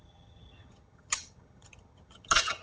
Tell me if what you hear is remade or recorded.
remade